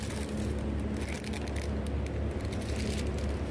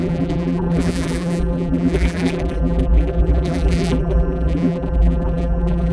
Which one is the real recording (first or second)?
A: first